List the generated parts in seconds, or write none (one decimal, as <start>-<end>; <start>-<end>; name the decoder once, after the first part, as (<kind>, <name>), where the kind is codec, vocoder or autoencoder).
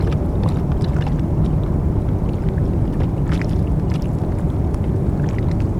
2.6-4.2 (vocoder, BigVGAN v2)